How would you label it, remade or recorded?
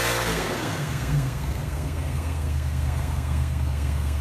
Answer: remade